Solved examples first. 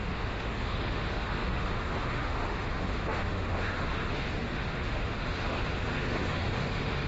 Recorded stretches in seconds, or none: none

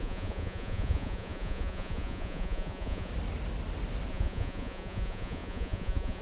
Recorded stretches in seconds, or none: 3.1-4.1

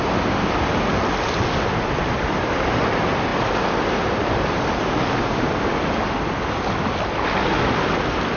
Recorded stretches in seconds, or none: 0.0-8.4